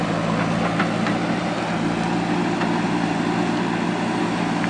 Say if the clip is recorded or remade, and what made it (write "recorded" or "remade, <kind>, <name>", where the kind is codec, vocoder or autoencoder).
recorded